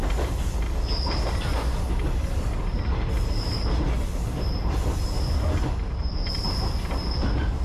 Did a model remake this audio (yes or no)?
no